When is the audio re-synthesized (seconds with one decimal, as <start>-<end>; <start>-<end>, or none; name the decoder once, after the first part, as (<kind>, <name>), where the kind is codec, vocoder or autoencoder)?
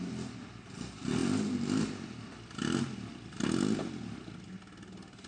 none